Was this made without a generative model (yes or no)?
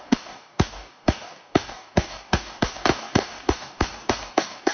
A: no